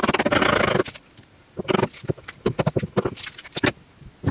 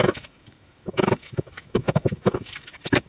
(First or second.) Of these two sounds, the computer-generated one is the second